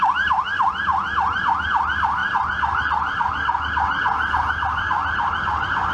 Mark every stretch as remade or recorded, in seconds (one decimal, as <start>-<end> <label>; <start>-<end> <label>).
0.0-5.9 recorded